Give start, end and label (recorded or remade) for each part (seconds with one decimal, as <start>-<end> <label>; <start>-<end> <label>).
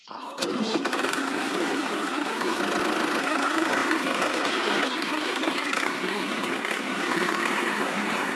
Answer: 0.0-2.6 remade; 2.6-3.2 recorded; 3.2-8.4 remade